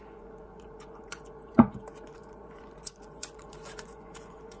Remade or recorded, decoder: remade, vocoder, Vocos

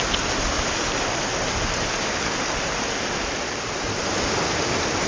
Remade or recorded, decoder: recorded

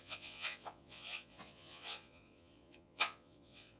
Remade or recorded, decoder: remade, vocoder, Vocos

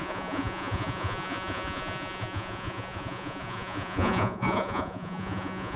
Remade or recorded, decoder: remade, vocoder, Vocos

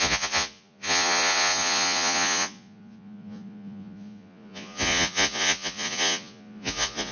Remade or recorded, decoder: remade, vocoder, Vocos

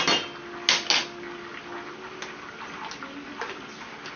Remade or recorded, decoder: recorded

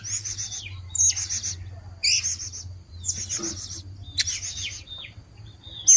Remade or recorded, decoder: recorded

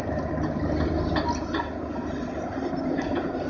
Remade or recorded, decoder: recorded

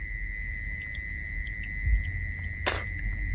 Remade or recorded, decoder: recorded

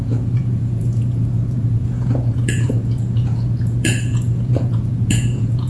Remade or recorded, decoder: remade, vocoder, Vocos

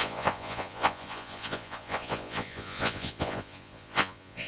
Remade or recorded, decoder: remade, vocoder, Vocos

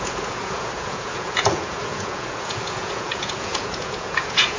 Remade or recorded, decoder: remade, vocoder, Vocos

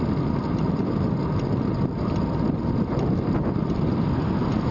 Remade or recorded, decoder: recorded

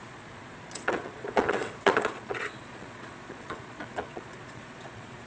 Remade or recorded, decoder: remade, vocoder, Vocos